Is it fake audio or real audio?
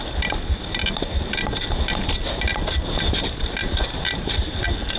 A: real